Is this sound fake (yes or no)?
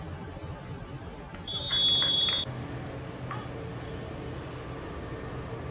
no